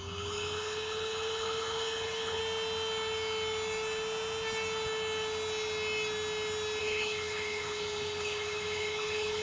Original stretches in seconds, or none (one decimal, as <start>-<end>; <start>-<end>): 2.4-6.8